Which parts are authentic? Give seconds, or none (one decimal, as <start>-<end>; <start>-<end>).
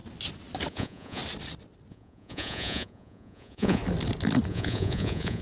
0.0-0.7; 1.2-1.9; 3.8-4.5